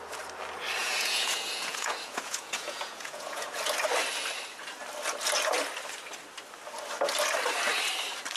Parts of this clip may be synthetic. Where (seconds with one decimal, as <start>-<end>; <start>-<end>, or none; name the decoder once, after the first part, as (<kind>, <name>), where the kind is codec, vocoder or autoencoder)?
0.8-3.6 (vocoder, Vocos)